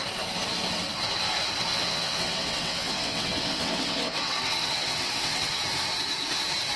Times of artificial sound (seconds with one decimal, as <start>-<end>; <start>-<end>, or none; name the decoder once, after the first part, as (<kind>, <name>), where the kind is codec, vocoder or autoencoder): 1.7-5.6 (vocoder, WaveNeXt)